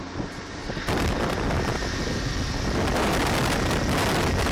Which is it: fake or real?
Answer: real